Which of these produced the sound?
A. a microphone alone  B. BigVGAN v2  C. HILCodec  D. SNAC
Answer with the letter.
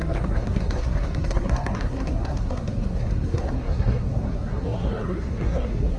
D